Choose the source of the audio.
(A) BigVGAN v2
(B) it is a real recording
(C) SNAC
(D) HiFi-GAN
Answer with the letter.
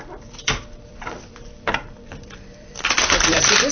A